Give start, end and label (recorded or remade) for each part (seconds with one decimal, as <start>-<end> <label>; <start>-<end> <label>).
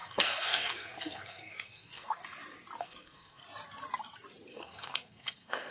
0.0-2.2 remade; 2.2-2.8 recorded; 2.8-3.4 remade; 3.4-4.5 recorded; 4.5-5.7 remade